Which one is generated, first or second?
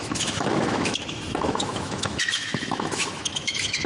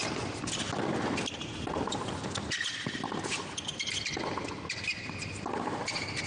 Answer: first